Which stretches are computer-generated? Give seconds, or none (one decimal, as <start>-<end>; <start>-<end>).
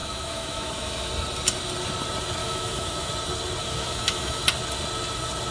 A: 0.0-1.1; 2.4-3.1; 3.6-4.4